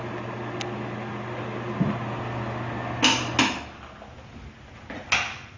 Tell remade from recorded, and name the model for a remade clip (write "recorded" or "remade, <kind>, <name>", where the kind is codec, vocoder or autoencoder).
recorded